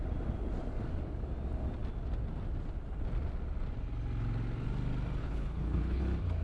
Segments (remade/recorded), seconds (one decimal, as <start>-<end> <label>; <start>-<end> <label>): 0.0-5.2 recorded; 5.2-6.0 remade; 6.0-6.4 recorded